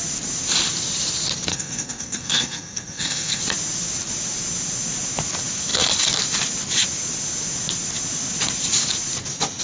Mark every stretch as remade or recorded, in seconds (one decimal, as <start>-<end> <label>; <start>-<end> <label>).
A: 0.0-1.5 recorded; 1.5-3.4 remade; 3.4-9.6 recorded